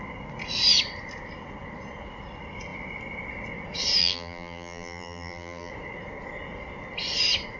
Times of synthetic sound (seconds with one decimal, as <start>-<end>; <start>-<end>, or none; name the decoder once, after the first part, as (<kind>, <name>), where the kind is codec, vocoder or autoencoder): 4.0-5.7 (vocoder, BigVGAN v2)